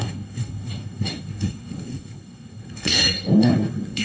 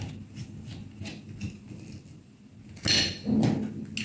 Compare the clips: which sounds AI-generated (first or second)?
first